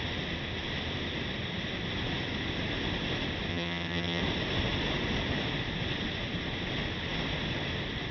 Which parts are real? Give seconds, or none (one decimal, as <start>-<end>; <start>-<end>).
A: 0.0-3.5; 4.2-8.1

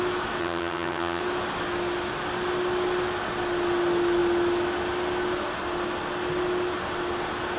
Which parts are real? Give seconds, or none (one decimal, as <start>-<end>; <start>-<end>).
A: 0.0-0.4; 1.2-7.6

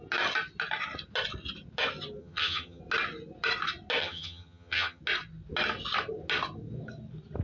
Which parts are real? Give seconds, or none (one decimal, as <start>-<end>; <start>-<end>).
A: 0.0-2.2; 2.8-4.0; 5.0-7.4

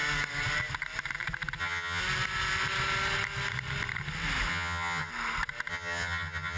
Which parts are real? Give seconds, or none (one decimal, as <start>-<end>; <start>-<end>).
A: 0.0-1.6; 2.0-4.5; 5.1-5.7